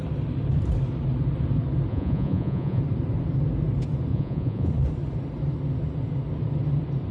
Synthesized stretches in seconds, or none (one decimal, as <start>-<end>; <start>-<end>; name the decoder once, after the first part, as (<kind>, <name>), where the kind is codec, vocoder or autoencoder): 1.9-2.8 (vocoder, Vocos); 4.1-4.7